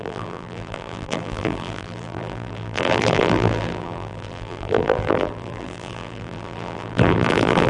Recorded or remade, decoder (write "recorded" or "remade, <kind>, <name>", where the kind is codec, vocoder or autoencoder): remade, vocoder, BigVGAN v2